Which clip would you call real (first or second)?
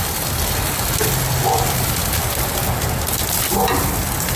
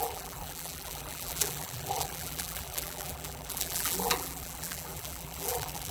first